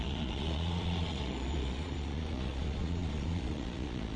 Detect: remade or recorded remade